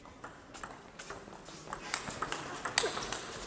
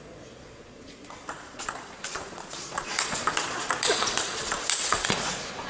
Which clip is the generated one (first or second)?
second